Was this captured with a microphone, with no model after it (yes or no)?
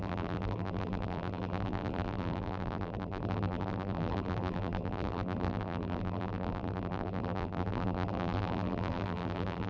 no